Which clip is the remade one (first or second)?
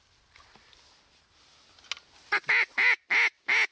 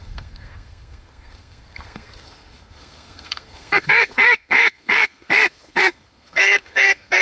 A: second